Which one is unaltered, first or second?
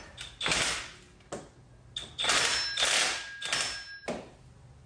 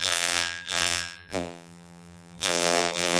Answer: first